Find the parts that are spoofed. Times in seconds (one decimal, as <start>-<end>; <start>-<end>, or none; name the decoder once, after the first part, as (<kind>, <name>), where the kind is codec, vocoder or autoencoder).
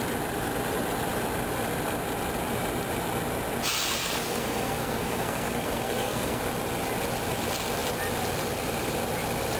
4.0-6.4 (codec, SNAC)